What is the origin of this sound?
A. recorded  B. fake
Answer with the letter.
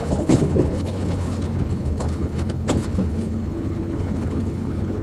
B